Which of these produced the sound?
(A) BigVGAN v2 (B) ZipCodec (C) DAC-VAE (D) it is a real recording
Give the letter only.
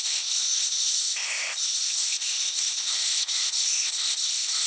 B